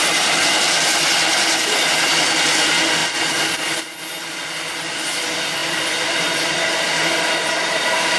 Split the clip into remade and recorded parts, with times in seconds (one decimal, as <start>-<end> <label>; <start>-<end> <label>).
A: 0.0-1.3 recorded; 1.3-1.8 remade; 1.8-5.6 recorded; 5.6-6.7 remade; 6.7-8.2 recorded